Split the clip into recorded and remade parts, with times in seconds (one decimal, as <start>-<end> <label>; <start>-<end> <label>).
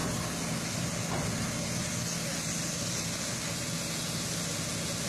0.0-5.1 recorded